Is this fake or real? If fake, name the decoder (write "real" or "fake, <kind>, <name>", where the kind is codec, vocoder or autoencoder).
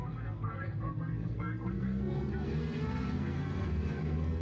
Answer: fake, codec, SNAC